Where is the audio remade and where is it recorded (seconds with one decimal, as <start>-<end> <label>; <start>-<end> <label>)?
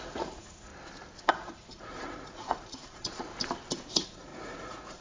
0.0-0.7 remade; 0.7-1.3 recorded; 1.3-3.3 remade; 3.3-3.9 recorded; 3.9-5.0 remade